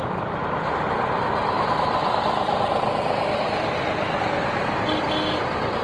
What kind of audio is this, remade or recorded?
recorded